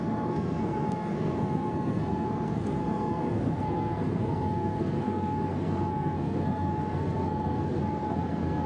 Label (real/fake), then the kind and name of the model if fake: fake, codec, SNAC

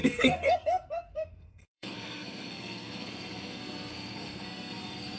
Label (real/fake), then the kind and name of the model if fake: fake, codec, SNAC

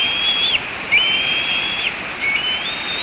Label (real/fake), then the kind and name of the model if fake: real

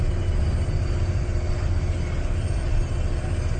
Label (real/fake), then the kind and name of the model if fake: real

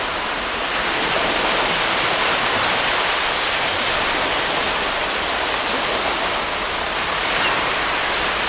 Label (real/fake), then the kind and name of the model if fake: fake, vocoder, BigVGAN v2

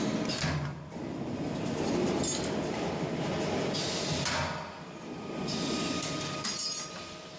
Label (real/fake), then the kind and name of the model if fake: real